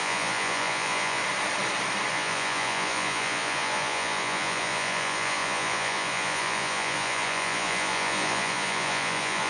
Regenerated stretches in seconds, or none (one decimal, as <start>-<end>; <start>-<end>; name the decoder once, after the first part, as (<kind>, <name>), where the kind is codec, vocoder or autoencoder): 0.0-1.2 (vocoder, Vocos); 2.1-9.5